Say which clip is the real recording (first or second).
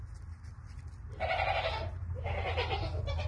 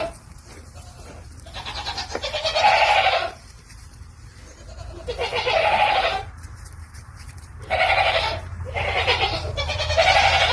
first